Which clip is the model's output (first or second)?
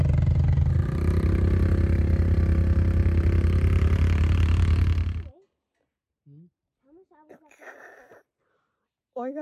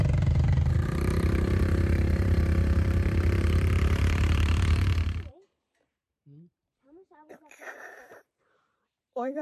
second